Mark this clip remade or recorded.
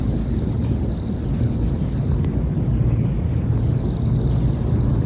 recorded